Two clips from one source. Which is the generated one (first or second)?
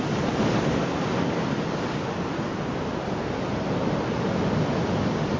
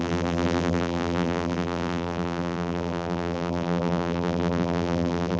second